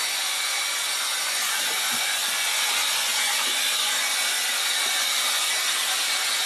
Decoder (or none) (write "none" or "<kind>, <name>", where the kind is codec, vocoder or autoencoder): vocoder, Vocos